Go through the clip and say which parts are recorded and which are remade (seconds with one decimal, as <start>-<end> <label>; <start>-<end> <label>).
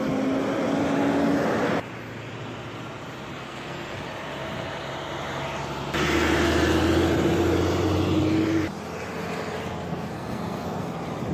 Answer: 0.0-3.3 recorded; 3.3-4.0 remade; 4.0-9.9 recorded; 9.9-10.9 remade; 10.9-11.3 recorded